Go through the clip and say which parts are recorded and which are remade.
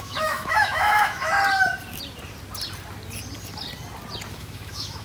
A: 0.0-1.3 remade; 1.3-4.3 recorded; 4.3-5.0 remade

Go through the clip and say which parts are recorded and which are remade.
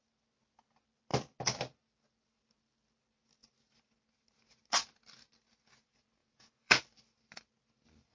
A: 0.0-6.2 recorded; 6.2-6.8 remade; 6.8-8.1 recorded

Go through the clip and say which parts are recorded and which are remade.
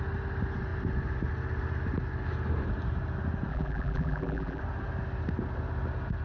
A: 0.0-3.5 recorded; 3.5-4.6 remade; 4.6-6.2 recorded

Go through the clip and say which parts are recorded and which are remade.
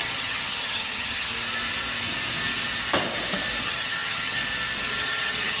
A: 0.0-1.3 remade; 1.3-3.6 recorded; 3.6-4.4 remade; 4.4-5.0 recorded; 5.0-5.6 remade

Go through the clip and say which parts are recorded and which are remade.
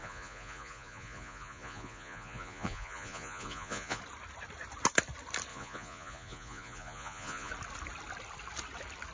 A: 0.0-4.0 remade; 4.0-5.5 recorded; 5.5-7.5 remade; 7.5-9.1 recorded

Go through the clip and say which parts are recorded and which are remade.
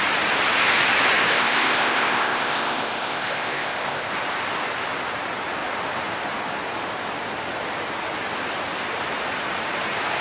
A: 0.0-1.3 recorded; 1.3-4.1 remade; 4.1-10.2 recorded